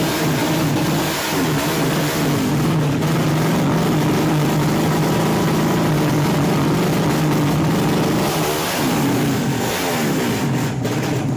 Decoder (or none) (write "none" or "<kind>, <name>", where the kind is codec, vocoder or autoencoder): none